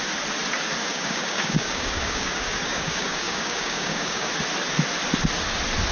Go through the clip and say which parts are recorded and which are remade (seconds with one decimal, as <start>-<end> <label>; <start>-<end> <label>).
0.0-0.8 recorded; 0.8-4.3 remade; 4.3-5.9 recorded